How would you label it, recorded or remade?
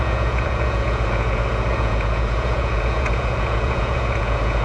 remade